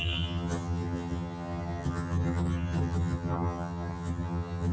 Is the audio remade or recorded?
remade